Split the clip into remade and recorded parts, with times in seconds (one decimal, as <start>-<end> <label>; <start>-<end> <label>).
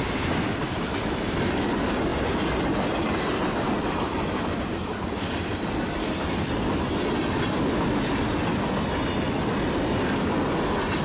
0.0-2.1 recorded; 2.1-5.7 remade; 5.7-11.0 recorded